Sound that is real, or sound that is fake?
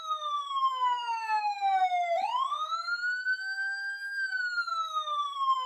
fake